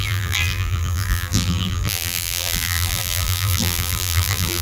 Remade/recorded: remade